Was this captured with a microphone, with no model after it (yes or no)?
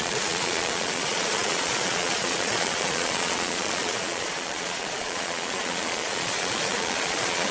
no